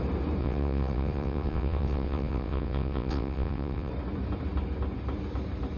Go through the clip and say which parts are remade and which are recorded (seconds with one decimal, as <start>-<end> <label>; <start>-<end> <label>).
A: 0.0-0.4 recorded; 0.4-3.9 remade; 3.9-5.8 recorded